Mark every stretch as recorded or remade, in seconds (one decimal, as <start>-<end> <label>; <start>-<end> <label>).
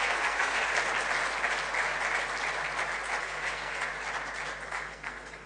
0.0-0.7 remade; 0.7-3.2 recorded; 3.2-3.9 remade; 3.9-4.7 recorded; 4.7-5.5 remade